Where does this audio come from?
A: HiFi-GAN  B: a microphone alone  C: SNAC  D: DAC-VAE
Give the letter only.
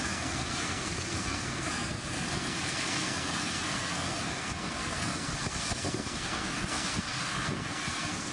C